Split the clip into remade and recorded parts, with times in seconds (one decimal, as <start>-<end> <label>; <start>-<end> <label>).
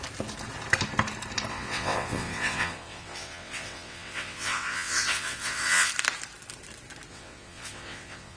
0.0-1.5 recorded; 1.5-5.9 remade; 5.9-7.1 recorded; 7.1-8.4 remade